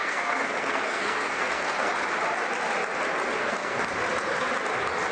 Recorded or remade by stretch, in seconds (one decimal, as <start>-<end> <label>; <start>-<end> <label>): 0.0-1.9 remade; 1.9-3.4 recorded; 3.4-3.9 remade; 3.9-5.1 recorded